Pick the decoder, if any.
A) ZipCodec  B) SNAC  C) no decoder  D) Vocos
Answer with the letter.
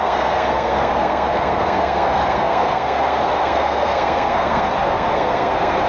B